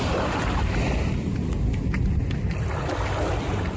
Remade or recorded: recorded